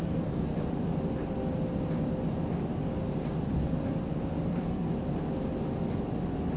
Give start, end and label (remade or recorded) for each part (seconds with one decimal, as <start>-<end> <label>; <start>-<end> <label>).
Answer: 0.0-0.5 remade; 0.5-4.5 recorded; 4.5-4.9 remade; 4.9-6.6 recorded